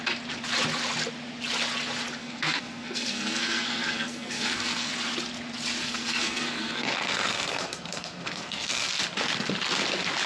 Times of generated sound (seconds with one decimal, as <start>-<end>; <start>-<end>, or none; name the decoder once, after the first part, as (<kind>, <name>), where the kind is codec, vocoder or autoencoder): 2.2-4.9 (codec, SNAC); 5.8-8.9